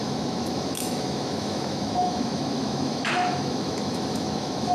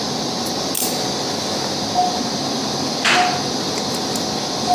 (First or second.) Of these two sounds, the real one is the second